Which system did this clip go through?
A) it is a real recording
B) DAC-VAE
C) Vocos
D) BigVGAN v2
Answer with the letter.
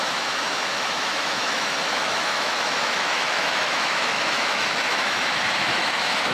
B